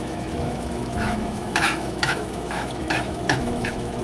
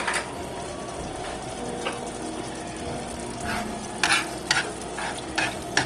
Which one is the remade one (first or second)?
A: first